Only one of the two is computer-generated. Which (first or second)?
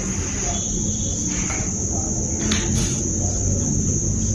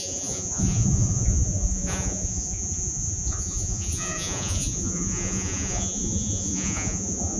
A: second